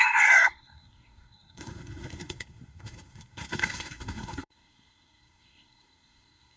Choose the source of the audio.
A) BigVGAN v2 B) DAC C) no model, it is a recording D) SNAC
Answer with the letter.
D